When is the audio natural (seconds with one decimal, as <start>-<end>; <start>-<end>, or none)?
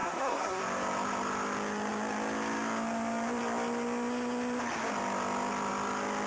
0.6-6.3